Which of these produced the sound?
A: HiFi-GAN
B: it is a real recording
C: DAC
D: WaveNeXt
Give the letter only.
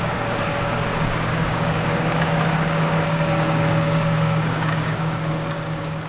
C